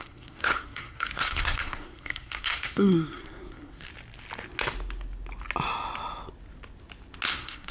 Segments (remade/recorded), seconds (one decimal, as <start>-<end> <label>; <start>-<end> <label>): 0.0-3.9 remade; 3.9-7.3 recorded; 7.3-7.7 remade